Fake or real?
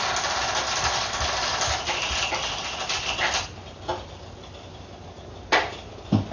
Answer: real